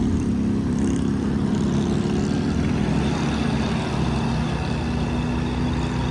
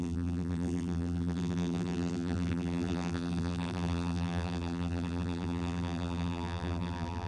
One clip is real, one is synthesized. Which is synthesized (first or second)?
second